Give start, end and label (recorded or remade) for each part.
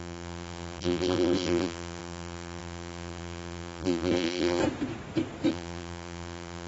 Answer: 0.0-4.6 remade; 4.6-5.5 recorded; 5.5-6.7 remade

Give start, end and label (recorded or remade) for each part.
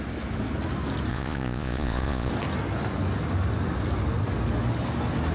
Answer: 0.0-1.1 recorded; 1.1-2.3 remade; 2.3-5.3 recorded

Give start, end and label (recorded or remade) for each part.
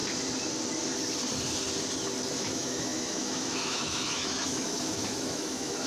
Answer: 0.0-2.4 recorded; 2.4-5.9 remade